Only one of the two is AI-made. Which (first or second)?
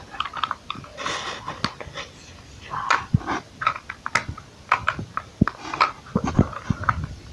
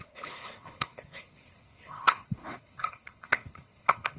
second